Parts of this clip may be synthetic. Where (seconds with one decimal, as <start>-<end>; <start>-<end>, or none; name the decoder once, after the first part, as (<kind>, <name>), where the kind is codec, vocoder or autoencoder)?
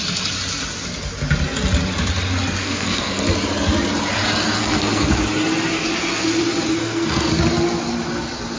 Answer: 2.6-3.2 (codec, SNAC); 4.6-5.1; 6.8-7.3